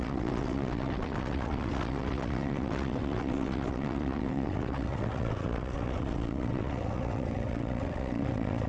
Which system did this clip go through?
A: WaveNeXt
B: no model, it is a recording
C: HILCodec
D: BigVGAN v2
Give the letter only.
A